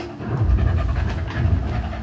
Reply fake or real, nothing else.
real